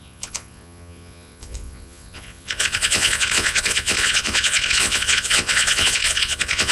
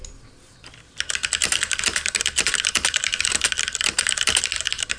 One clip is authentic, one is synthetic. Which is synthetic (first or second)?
first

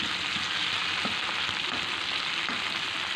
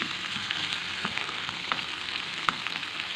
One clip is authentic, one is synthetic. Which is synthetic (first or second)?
second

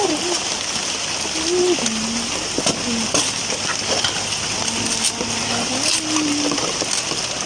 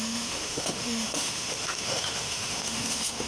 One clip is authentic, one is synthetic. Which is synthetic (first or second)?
second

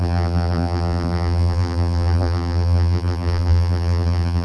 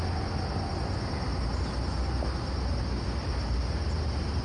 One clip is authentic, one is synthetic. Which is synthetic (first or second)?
first